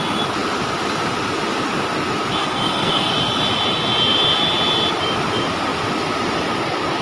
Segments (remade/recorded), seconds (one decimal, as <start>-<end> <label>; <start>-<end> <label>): 0.0-2.4 recorded; 2.4-3.1 remade; 3.1-7.0 recorded